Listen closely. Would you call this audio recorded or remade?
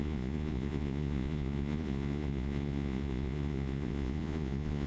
remade